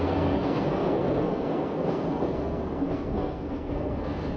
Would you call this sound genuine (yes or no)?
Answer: no